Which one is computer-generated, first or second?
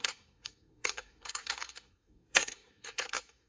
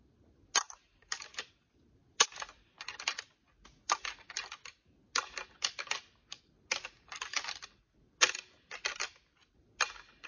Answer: first